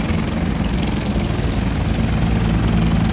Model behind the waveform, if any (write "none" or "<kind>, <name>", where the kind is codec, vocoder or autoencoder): none